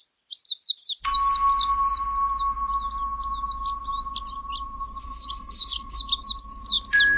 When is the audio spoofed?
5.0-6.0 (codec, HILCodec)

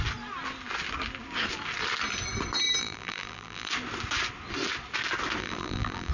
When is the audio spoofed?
2.8-3.7 (vocoder, BigVGAN v2); 5.4-6.1

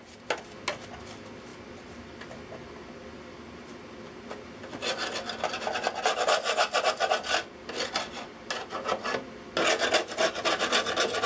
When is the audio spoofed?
none

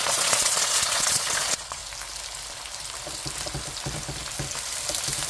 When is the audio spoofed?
0.0-1.8 (vocoder, Vocos)

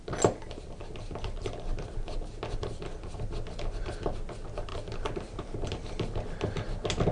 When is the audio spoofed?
none

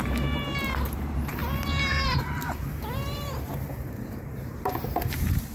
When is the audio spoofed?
0.0-5.5 (vocoder, BigVGAN v2)